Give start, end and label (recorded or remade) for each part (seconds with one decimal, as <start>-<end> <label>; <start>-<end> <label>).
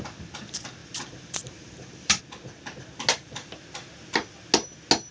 0.0-0.8 recorded; 0.8-2.2 remade; 2.2-5.1 recorded